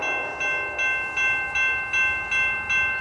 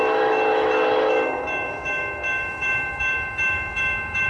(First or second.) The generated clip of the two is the second